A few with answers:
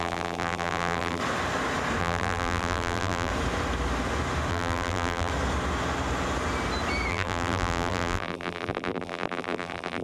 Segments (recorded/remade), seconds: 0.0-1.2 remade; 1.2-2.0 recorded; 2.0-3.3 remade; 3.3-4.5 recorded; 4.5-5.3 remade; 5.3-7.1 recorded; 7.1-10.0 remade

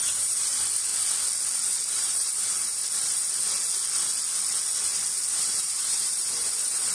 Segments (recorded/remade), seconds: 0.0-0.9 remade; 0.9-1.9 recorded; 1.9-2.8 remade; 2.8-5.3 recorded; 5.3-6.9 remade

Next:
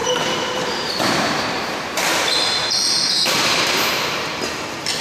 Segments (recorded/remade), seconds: 0.0-1.7 remade; 1.7-2.1 recorded; 2.1-4.4 remade; 4.4-5.0 recorded